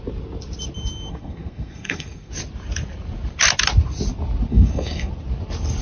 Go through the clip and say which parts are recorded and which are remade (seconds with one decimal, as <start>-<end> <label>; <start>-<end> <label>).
0.0-1.1 recorded; 1.1-2.3 remade; 2.3-4.5 recorded; 4.5-5.1 remade; 5.1-5.8 recorded